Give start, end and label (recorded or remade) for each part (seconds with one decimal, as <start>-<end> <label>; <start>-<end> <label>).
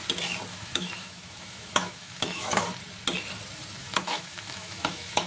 0.0-0.5 recorded; 0.5-2.6 remade; 2.6-3.8 recorded; 3.8-5.3 remade